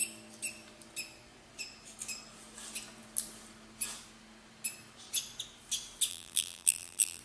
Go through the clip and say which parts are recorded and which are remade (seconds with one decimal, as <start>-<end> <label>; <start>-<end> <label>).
0.0-6.1 recorded; 6.1-7.2 remade